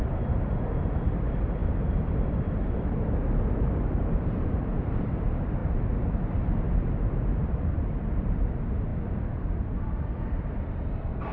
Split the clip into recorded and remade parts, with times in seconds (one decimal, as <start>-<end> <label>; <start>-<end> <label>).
0.0-11.3 remade